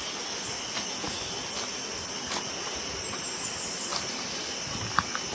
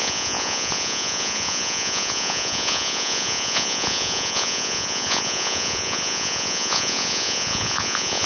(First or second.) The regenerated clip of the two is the second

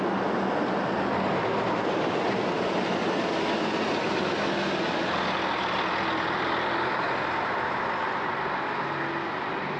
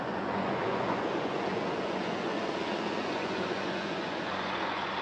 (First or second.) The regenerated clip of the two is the second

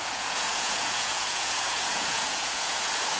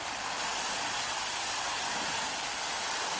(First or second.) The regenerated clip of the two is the first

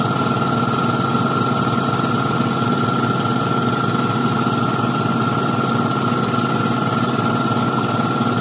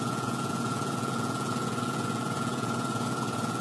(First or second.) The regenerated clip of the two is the second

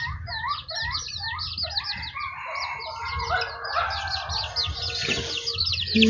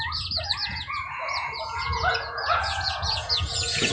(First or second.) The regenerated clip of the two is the second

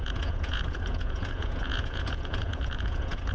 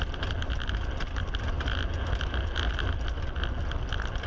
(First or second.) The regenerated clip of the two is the first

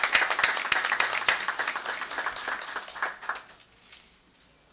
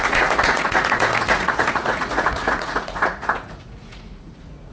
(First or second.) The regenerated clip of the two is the second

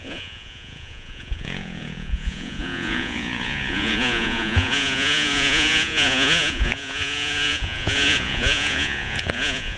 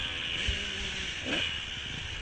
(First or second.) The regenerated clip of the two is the first